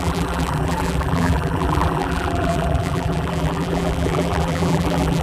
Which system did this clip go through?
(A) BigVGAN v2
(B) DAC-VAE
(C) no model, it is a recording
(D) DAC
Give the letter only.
A